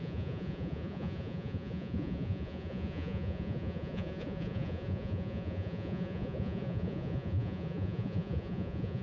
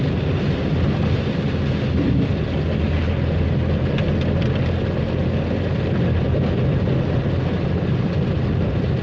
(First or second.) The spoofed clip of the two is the first